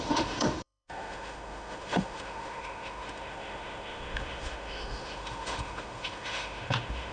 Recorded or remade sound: remade